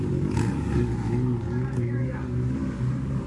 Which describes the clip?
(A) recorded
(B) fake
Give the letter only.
B